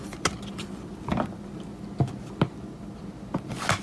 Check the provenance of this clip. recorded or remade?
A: recorded